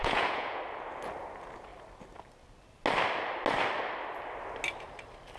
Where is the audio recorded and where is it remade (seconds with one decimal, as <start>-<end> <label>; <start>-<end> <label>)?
0.0-0.6 remade; 0.6-5.4 recorded